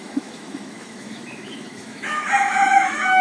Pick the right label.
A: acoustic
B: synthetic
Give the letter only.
B